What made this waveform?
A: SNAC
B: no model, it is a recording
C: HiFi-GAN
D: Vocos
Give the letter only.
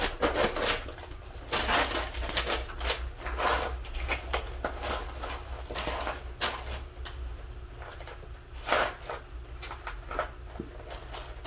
B